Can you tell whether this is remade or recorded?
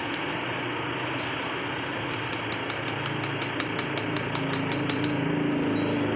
recorded